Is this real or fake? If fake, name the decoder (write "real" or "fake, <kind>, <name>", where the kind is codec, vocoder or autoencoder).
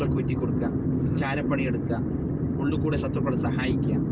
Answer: real